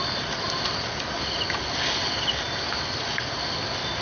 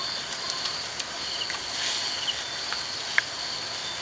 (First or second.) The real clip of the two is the second